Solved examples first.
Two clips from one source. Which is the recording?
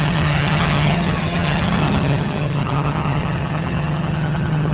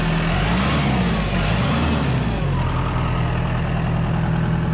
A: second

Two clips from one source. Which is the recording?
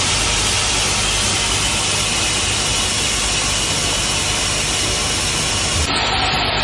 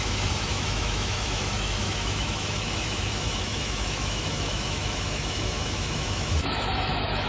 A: first